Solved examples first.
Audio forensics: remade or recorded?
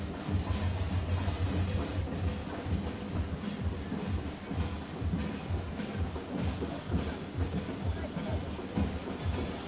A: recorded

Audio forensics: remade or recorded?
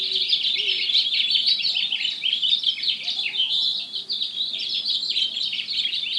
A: recorded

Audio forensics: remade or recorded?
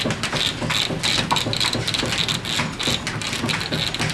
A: recorded